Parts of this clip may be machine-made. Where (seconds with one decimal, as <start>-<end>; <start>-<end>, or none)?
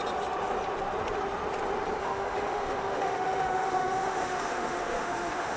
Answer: 2.0-5.6